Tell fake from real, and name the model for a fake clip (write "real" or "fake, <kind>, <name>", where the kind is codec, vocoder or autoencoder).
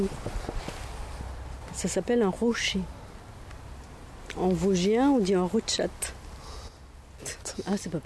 real